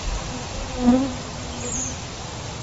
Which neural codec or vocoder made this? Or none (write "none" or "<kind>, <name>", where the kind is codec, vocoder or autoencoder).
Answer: none